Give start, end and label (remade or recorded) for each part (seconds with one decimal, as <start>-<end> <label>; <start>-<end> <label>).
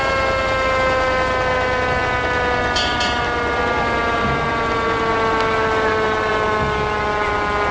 0.0-7.7 recorded